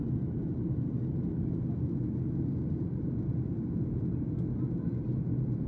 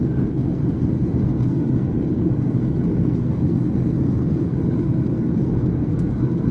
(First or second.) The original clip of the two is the first